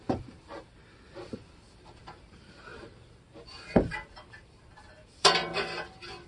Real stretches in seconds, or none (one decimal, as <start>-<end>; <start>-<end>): 5.4-6.3